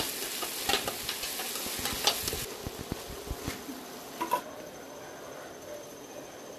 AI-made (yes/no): no